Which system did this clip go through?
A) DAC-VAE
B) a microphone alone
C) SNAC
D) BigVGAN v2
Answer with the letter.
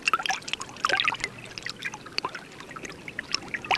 B